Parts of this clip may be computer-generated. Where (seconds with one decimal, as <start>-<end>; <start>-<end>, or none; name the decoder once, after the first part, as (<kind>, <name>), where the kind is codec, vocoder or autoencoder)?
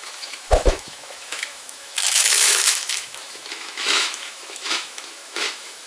0.0-5.9 (autoencoder, DAC-VAE)